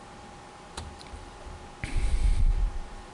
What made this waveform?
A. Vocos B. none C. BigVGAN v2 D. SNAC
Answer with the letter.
C